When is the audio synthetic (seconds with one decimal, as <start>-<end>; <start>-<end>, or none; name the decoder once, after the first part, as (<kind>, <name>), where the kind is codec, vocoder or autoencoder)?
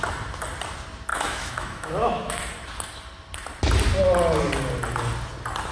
1.1-2.4 (autoencoder, DAC-VAE)